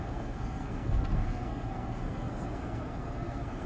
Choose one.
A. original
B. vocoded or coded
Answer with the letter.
B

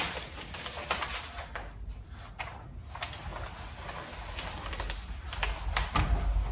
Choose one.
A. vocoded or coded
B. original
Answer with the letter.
B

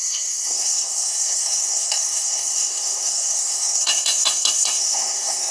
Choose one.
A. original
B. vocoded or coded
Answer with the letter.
B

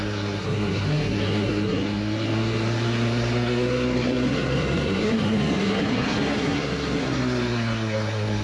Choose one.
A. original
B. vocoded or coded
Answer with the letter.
B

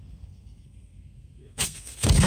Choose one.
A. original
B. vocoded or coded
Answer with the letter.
B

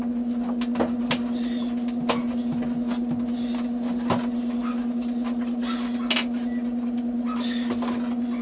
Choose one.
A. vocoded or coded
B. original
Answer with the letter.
B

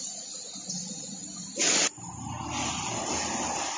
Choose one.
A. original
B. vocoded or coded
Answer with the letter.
A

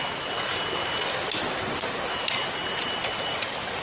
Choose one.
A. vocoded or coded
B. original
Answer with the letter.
B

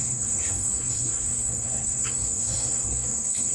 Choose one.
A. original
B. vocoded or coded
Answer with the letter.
B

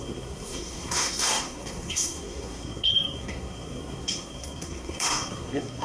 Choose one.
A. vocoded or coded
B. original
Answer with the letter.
A